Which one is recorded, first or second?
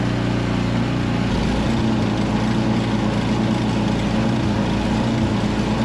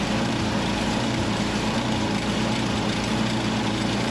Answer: first